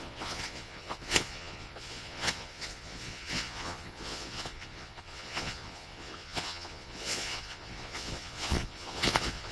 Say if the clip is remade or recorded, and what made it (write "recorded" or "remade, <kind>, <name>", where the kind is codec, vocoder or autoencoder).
remade, vocoder, Vocos